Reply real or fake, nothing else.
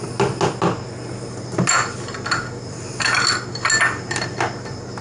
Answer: real